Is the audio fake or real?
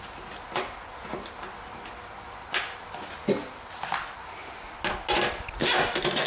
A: real